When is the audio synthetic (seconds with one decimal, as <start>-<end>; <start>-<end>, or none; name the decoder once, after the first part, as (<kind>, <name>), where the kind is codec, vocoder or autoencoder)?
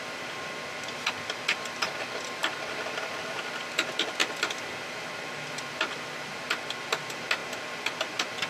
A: none